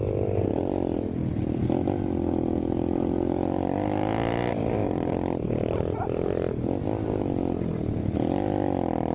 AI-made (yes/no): no